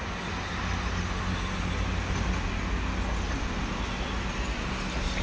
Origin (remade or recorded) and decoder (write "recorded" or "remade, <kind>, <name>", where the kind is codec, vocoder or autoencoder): recorded